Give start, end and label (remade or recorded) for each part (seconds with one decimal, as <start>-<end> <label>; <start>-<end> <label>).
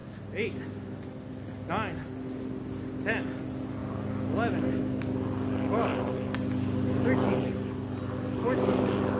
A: 0.0-9.2 recorded